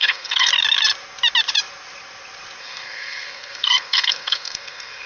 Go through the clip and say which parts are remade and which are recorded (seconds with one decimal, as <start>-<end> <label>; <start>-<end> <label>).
0.0-0.5 remade; 0.5-2.6 recorded; 2.6-5.1 remade